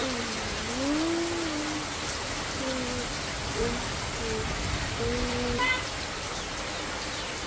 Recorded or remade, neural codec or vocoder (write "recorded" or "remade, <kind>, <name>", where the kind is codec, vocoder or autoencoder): recorded